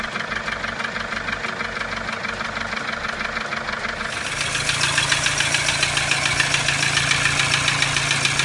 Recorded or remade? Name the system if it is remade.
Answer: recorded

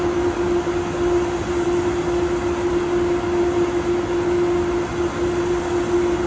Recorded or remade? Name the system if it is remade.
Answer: recorded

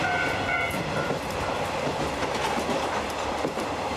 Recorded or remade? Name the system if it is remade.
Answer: recorded